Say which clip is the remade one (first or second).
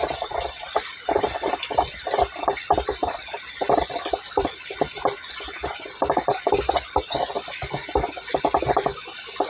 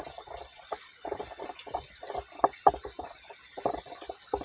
first